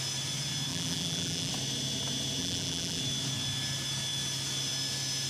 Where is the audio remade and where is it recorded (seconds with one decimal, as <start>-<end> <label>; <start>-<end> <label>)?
0.0-0.7 recorded; 0.7-1.5 remade; 1.5-2.4 recorded; 2.4-3.0 remade; 3.0-5.3 recorded